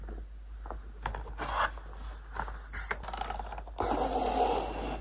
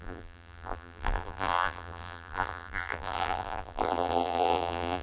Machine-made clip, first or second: second